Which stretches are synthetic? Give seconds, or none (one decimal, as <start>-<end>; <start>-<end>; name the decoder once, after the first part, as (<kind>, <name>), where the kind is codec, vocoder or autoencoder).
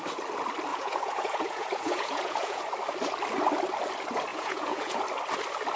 0.7-2.6 (vocoder, Vocos); 4.3-5.0